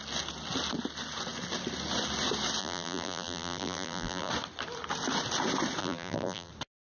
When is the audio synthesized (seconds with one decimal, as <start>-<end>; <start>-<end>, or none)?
2.6-4.3; 5.8-6.5